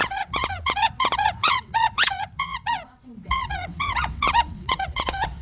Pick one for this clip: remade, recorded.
remade